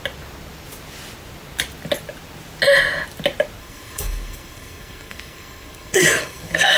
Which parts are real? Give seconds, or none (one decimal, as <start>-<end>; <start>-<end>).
0.0-3.6